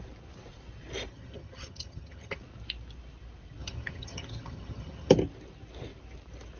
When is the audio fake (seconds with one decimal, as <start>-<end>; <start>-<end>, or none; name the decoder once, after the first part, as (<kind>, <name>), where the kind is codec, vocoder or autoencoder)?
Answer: 1.1-2.4 (vocoder, HiFi-GAN); 3.6-5.1